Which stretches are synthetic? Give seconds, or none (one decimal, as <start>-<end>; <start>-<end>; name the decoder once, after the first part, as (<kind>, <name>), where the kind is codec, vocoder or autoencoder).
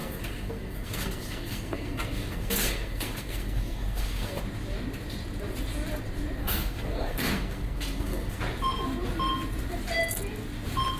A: 0.0-4.4 (codec, SNAC); 6.4-8.4